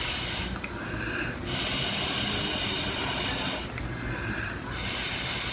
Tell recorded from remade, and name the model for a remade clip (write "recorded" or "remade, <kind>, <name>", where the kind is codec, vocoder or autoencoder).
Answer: recorded